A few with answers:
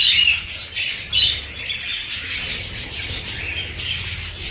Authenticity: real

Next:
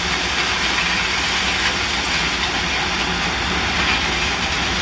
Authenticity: real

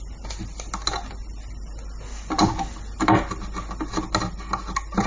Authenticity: real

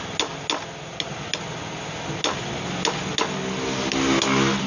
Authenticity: real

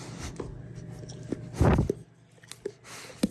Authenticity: real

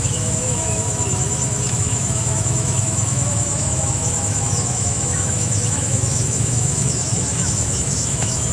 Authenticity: fake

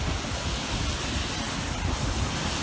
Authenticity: real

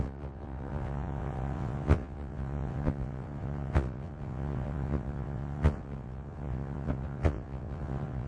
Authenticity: fake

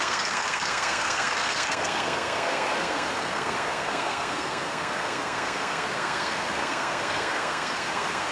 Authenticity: fake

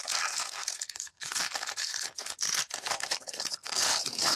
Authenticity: fake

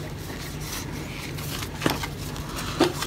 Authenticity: real